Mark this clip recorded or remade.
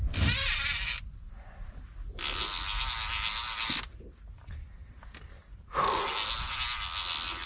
recorded